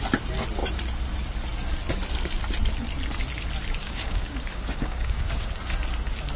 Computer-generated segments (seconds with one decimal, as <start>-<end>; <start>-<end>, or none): 3.8-5.5